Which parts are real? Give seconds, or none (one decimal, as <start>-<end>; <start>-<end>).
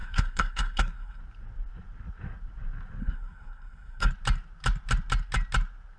1.2-3.0; 4.1-6.0